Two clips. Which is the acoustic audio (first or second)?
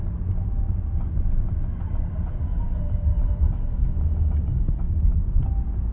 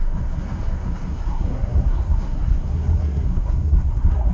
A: first